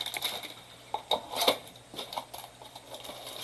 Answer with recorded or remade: recorded